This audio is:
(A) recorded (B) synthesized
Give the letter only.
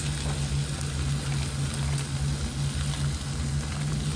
A